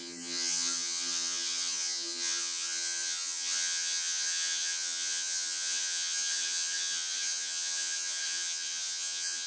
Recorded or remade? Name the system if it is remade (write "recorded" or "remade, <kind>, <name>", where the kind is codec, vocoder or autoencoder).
remade, vocoder, HiFi-GAN